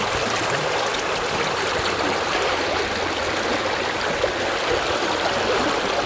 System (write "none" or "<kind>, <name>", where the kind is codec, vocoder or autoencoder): none